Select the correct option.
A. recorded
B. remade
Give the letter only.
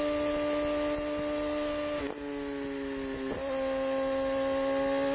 A